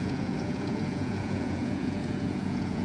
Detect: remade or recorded remade